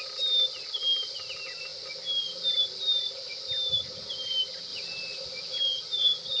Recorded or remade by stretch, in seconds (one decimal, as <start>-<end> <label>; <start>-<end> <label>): 0.0-6.4 recorded

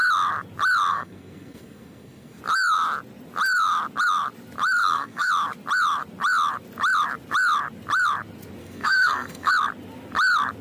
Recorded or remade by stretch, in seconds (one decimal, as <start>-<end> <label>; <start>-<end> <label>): 0.0-0.9 recorded; 0.9-2.4 remade; 2.4-4.8 recorded; 4.8-5.3 remade; 5.3-8.6 recorded; 8.6-9.5 remade; 9.5-10.6 recorded

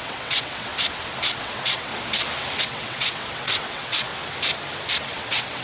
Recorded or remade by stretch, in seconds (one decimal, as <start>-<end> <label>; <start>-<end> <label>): 0.0-0.7 remade; 0.7-1.4 recorded; 1.4-1.9 remade; 1.9-2.6 recorded; 2.6-4.1 remade; 4.1-5.1 recorded; 5.1-5.6 remade

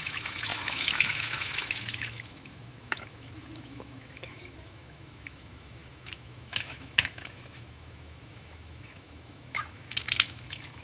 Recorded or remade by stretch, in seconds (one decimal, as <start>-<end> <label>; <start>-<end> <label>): 0.0-10.8 remade

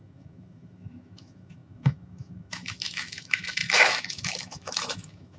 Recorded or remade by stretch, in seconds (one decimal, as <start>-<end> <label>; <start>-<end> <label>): 0.0-5.4 remade

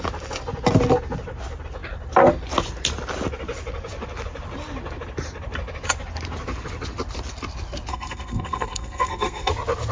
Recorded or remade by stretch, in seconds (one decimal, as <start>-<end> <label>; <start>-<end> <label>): 0.0-7.9 recorded; 7.9-9.5 remade; 9.5-9.9 recorded